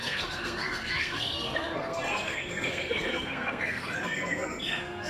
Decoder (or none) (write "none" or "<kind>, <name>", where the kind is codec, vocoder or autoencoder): codec, SNAC